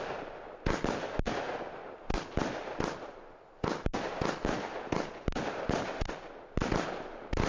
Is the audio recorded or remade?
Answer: recorded